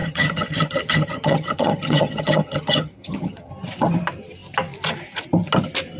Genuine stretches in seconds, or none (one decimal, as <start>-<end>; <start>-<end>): 3.5-6.0

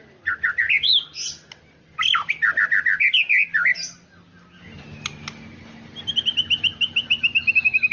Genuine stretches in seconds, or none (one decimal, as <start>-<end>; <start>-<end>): 0.0-7.9

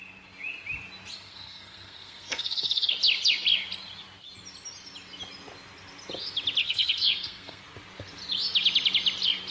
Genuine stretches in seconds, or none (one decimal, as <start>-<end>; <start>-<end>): 0.0-1.1; 2.9-6.6; 7.6-9.5

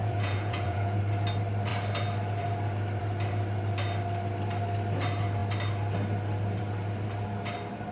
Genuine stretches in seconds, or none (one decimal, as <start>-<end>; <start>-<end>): 1.0-7.9

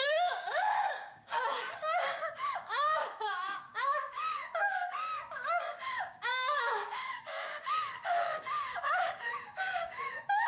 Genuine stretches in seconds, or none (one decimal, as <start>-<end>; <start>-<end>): none

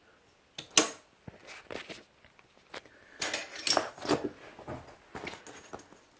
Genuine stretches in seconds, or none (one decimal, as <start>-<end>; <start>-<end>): 0.0-6.2

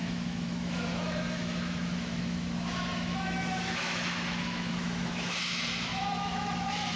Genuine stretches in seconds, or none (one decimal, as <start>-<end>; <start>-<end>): none

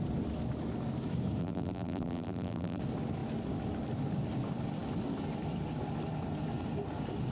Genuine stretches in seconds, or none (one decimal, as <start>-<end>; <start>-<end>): 0.0-1.4; 2.8-7.3